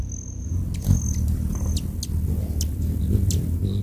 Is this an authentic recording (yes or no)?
yes